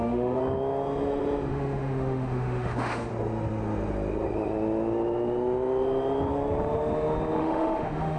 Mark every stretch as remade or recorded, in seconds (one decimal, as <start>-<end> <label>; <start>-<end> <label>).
0.0-0.4 remade; 0.4-1.5 recorded; 1.5-3.1 remade; 3.1-7.4 recorded; 7.4-8.2 remade